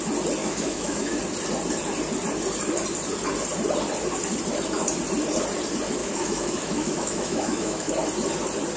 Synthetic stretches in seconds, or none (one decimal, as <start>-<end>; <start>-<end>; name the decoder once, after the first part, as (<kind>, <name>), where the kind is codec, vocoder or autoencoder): 0.4-1.2 (autoencoder, DAC-VAE); 6.0-7.9